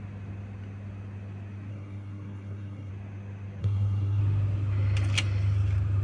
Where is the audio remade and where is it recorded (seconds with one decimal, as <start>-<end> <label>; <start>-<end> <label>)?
0.0-1.7 recorded; 1.7-2.9 remade; 2.9-3.6 recorded; 3.6-4.2 remade; 4.2-6.0 recorded

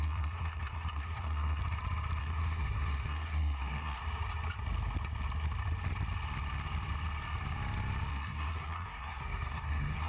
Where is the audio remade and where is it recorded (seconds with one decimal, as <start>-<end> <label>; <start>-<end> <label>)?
0.0-1.6 remade; 1.6-2.2 recorded; 2.2-4.0 remade; 4.0-8.1 recorded; 8.1-10.1 remade

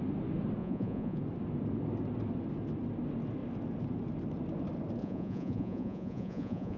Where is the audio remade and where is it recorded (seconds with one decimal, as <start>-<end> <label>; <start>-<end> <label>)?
0.0-0.6 recorded; 0.6-1.2 remade; 1.2-5.0 recorded; 5.0-6.8 remade

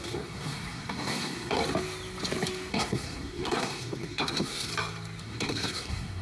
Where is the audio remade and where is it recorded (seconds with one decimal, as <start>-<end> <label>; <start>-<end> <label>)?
0.0-1.6 remade; 1.6-2.7 recorded; 2.7-4.7 remade; 4.7-5.2 recorded; 5.2-6.2 remade

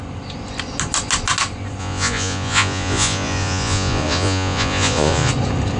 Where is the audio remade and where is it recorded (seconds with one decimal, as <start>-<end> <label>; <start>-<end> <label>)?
0.0-1.8 recorded; 1.8-5.3 remade; 5.3-5.8 recorded